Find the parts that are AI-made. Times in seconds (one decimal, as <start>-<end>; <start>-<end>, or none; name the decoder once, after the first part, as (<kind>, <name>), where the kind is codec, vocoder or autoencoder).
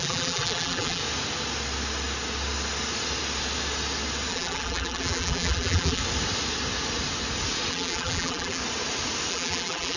0.0-1.0 (vocoder, BigVGAN v2); 4.3-6.0; 7.7-8.6; 9.3-10.0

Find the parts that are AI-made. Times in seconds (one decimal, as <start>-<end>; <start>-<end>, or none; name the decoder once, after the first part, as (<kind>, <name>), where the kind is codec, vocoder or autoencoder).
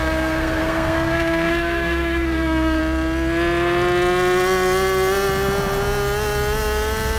0.0-2.8 (codec, SNAC)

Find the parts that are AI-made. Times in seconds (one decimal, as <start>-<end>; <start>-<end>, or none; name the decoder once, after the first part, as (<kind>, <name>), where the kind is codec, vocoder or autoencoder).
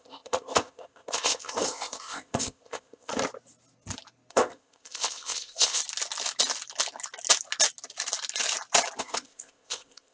0.0-3.1 (codec, ZipCodec); 4.3-5.8; 9.0-10.1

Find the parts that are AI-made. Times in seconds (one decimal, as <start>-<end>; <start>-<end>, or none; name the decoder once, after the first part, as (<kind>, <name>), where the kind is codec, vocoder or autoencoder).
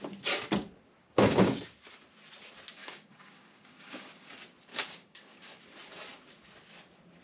1.0-1.6 (codec, DAC); 2.8-4.3; 4.7-5.6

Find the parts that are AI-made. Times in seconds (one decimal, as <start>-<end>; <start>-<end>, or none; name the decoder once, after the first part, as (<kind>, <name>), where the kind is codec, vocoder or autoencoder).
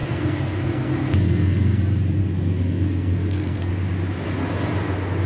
0.0-1.8 (codec, SNAC); 2.2-3.7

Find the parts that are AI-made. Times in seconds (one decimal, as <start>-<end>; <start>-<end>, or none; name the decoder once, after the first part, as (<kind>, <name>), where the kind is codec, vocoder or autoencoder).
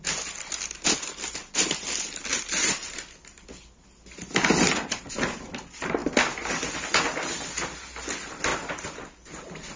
2.3-3.0 (vocoder, BigVGAN v2)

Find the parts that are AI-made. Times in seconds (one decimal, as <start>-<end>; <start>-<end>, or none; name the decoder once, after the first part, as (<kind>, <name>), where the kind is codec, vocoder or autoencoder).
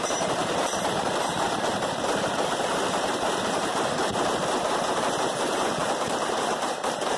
0.0-7.2 (vocoder, BigVGAN v2)